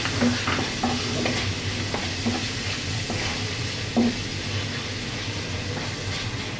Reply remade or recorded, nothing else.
recorded